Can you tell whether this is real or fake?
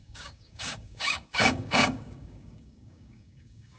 fake